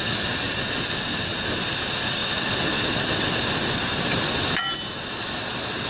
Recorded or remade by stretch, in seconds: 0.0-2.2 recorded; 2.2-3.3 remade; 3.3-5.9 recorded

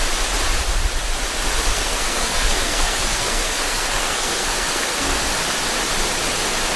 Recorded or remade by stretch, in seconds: 0.0-1.7 recorded; 1.7-5.2 remade; 5.2-6.8 recorded

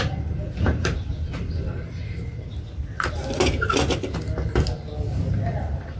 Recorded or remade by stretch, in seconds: 0.0-2.0 remade; 2.0-5.6 recorded; 5.6-6.0 remade

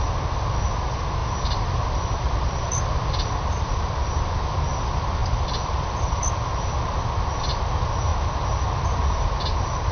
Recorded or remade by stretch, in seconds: 0.0-1.2 recorded; 1.2-4.2 remade; 4.2-5.2 recorded; 5.2-6.3 remade; 6.3-8.1 recorded; 8.1-9.3 remade; 9.3-9.9 recorded

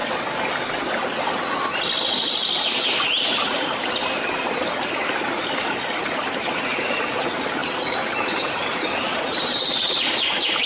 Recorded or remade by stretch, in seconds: 0.0-10.7 recorded

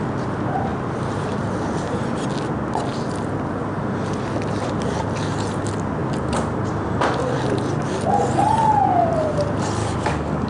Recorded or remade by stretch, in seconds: 0.0-9.8 recorded; 9.8-10.5 remade

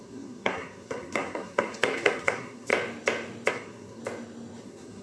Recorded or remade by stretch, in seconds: 0.0-2.7 remade; 2.7-3.5 recorded; 3.5-4.0 remade; 4.0-4.6 recorded; 4.6-5.0 remade

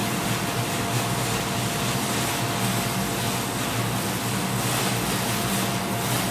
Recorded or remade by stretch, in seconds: 0.0-6.3 recorded